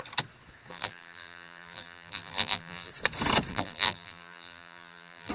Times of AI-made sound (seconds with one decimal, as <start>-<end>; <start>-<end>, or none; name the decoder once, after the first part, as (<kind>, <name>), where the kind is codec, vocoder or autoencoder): 0.7-2.9 (vocoder, BigVGAN v2); 3.5-5.3